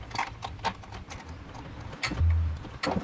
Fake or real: real